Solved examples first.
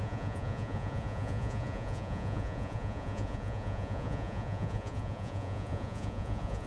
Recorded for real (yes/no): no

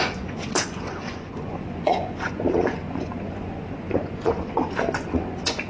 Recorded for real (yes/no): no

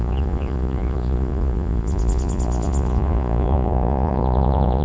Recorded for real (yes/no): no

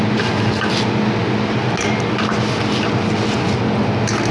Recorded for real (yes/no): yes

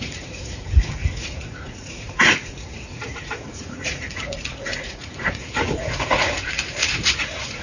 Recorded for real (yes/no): no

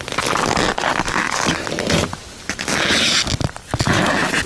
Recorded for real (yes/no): yes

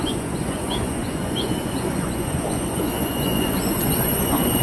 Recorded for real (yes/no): no